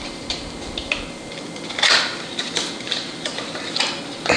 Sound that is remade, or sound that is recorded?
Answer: recorded